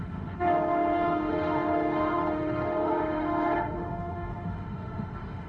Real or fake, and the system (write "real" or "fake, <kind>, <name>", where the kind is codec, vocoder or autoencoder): fake, autoencoder, DAC-VAE